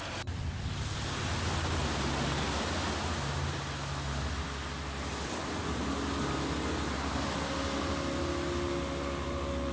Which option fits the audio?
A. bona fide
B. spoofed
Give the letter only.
A